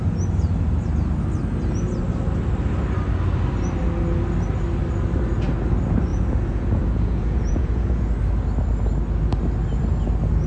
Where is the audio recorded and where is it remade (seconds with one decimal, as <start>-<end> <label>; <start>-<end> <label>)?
0.0-6.1 recorded; 6.1-8.1 remade; 8.1-10.5 recorded